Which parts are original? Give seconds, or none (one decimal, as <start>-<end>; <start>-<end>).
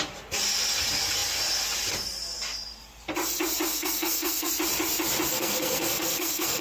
0.0-3.7; 4.5-5.3